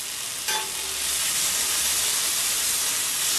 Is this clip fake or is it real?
real